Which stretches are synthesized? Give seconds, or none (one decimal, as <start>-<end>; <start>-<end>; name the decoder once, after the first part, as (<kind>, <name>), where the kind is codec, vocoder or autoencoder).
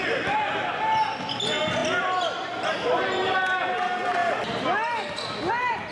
none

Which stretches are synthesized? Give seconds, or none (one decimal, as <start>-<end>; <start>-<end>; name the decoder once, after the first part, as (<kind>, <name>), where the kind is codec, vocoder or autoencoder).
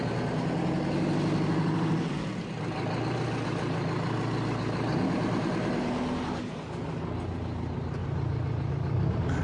none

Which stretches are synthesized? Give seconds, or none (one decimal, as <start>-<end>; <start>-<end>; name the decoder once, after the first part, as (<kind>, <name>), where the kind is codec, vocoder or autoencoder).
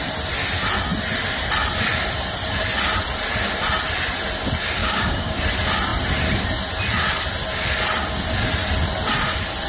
4.8-5.4 (codec, DAC)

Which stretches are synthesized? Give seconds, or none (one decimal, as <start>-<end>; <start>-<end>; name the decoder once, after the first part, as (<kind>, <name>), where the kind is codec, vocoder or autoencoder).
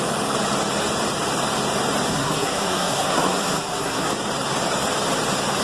2.1-4.1 (codec, SNAC)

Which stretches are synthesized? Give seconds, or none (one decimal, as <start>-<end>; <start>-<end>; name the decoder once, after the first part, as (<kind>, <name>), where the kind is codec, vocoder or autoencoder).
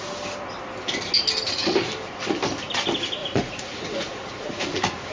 3.2-4.5 (vocoder, Vocos)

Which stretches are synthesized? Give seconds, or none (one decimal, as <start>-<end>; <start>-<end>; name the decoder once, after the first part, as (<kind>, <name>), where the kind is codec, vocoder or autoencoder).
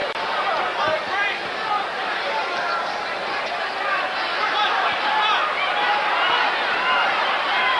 none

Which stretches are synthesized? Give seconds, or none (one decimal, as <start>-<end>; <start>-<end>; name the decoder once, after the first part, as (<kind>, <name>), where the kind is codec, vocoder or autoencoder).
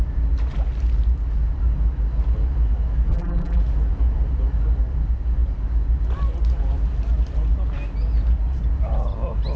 3.1-3.6 (vocoder, BigVGAN v2)